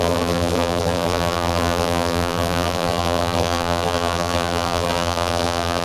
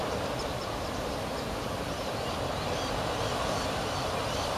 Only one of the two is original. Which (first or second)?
second